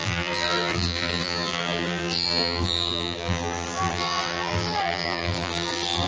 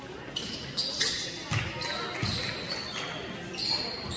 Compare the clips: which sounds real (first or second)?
second